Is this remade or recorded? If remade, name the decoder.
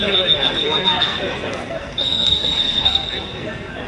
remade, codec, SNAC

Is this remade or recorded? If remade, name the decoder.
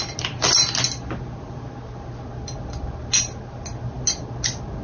recorded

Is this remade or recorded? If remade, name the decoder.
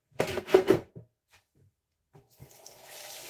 remade, codec, SNAC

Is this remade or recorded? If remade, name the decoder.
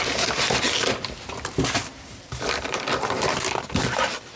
recorded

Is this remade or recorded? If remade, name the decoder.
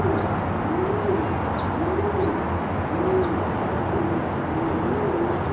recorded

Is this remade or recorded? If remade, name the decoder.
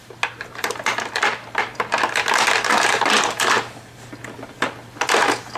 recorded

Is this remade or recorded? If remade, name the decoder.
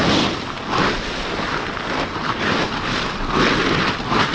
recorded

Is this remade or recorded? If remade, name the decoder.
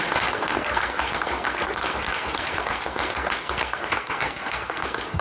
remade, codec, SNAC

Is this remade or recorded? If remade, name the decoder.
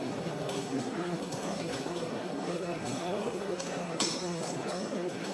remade, codec, SNAC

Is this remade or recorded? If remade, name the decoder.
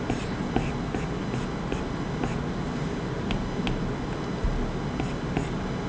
recorded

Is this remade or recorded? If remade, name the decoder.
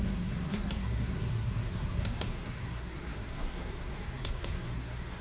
remade, codec, SNAC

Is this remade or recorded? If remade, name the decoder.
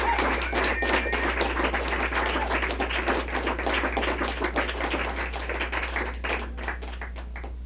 recorded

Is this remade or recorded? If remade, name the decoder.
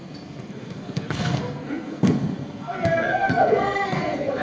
remade, codec, SNAC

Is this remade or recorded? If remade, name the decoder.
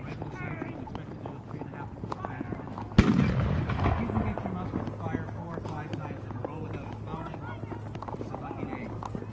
recorded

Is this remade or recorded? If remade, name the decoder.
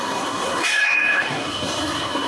remade, codec, SNAC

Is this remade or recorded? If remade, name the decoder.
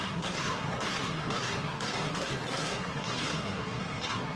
remade, codec, SNAC